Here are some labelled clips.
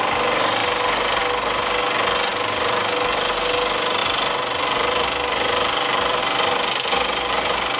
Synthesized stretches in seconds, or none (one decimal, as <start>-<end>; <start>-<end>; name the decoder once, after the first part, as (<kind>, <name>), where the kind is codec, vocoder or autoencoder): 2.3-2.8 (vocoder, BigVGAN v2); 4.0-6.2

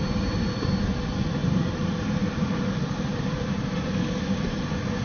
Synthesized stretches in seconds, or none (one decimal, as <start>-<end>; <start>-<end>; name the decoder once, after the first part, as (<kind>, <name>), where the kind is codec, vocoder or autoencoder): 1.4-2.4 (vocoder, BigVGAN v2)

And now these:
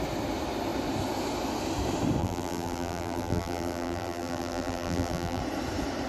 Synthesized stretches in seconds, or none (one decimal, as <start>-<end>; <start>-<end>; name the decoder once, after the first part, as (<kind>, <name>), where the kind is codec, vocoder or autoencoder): 2.2-5.4 (vocoder, BigVGAN v2)

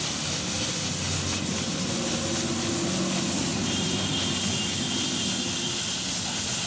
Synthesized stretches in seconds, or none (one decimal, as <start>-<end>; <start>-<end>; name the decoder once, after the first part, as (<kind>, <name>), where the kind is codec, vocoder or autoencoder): 3.5-4.1 (vocoder, BigVGAN v2)

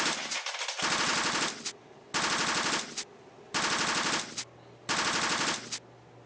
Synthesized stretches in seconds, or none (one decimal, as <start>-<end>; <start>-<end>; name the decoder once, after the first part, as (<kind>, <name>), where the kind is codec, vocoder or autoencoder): none